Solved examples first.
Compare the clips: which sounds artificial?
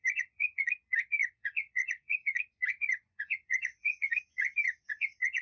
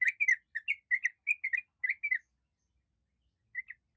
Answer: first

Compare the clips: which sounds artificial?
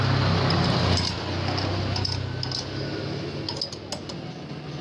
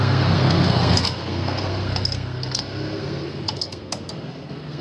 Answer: second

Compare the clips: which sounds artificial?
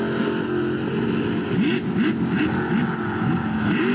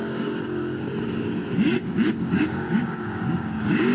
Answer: second